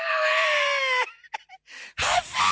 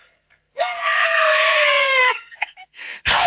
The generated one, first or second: second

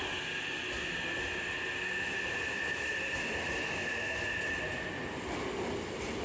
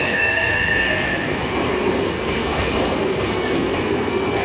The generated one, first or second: second